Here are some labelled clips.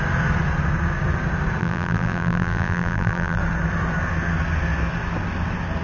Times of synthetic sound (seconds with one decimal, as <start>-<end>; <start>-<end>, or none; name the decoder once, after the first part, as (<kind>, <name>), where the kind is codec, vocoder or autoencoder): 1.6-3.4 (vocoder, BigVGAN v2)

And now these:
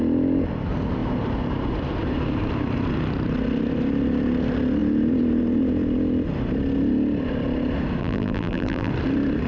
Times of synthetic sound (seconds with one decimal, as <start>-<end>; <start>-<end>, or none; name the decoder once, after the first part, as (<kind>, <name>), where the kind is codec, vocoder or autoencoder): 8.0-8.9 (vocoder, BigVGAN v2)

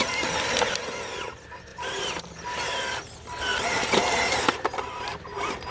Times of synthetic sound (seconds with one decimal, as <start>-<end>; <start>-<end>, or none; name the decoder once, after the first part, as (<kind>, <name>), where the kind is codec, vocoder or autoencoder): 1.7-2.3 (vocoder, BigVGAN v2); 3.5-5.7